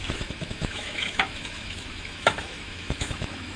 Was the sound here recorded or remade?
remade